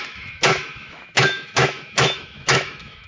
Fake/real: fake